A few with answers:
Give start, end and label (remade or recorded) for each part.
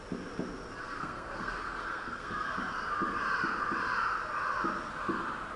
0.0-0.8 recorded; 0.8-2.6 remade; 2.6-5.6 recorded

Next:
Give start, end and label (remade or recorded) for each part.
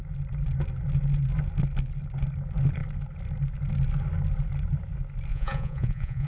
0.0-5.3 recorded; 5.3-6.3 remade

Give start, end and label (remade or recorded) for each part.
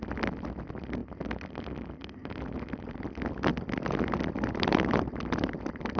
0.0-6.0 recorded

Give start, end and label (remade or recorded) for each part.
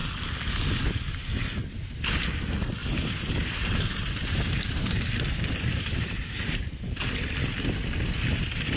0.0-2.8 recorded; 2.8-6.6 remade; 6.6-8.8 recorded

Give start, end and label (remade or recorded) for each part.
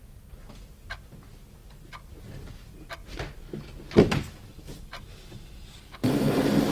0.0-6.7 recorded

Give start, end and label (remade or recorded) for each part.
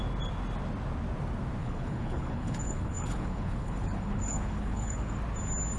0.0-1.6 recorded; 1.6-5.1 remade; 5.1-5.8 recorded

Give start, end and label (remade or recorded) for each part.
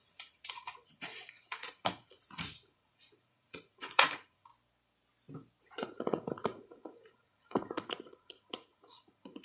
0.0-4.5 remade; 4.5-5.7 recorded; 5.7-9.4 remade